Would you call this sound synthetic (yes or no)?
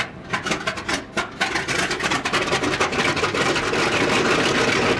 no